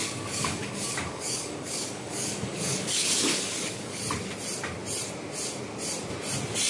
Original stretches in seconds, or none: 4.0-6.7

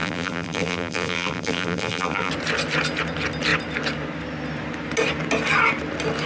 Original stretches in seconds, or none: 2.3-6.3

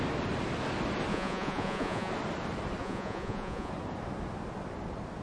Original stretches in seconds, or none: 0.0-1.1; 2.1-2.8; 3.7-5.2